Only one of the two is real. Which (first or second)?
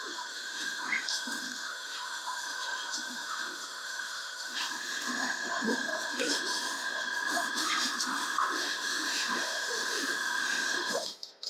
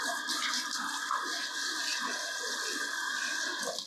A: second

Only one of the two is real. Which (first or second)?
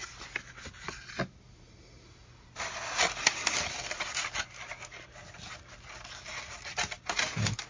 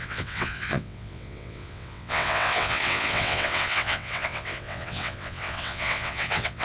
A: first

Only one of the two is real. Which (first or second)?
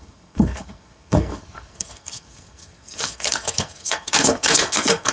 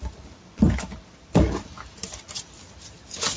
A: second